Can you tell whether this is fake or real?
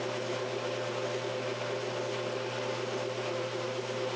real